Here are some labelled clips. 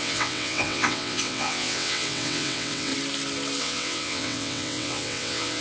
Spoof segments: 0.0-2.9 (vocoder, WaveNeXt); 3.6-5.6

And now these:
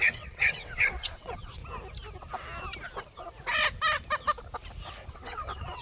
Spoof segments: 0.0-1.6 (vocoder, WaveNeXt); 5.1-5.8

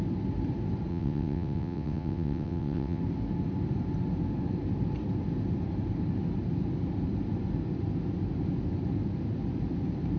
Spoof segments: 0.9-3.0 (vocoder, WaveNeXt)

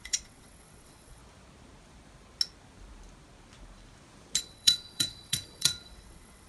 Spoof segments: 0.0-1.2 (vocoder, WaveNeXt); 4.4-6.5

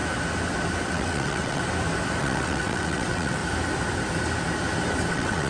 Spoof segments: 0.9-1.6 (vocoder, WaveNeXt); 2.2-3.4; 5.1-5.5